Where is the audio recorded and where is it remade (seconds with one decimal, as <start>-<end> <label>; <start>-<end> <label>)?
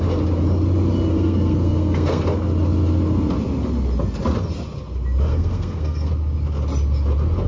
0.0-1.1 recorded; 1.1-2.2 remade; 2.2-5.3 recorded; 5.3-6.1 remade; 6.1-7.5 recorded